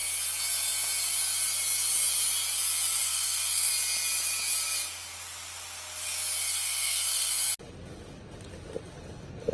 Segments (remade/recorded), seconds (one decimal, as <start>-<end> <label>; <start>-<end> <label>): 0.0-3.0 recorded; 3.0-3.7 remade; 3.7-6.4 recorded; 6.4-7.3 remade; 7.3-9.5 recorded